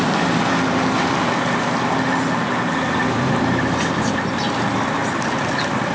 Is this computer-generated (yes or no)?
no